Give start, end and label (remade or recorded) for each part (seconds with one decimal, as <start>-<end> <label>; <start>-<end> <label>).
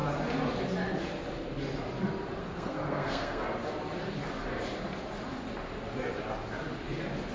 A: 0.0-2.4 recorded; 2.4-3.4 remade; 3.4-7.3 recorded